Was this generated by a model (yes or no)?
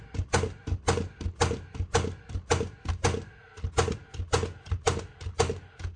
no